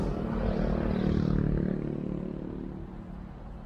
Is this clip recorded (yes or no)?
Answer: yes